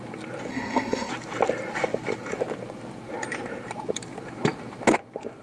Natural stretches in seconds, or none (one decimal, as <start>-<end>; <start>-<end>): 0.0-0.5; 1.1-5.4